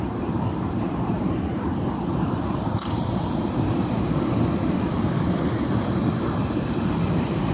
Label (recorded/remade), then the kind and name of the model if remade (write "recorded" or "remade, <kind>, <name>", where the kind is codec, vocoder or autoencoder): remade, vocoder, BigVGAN v2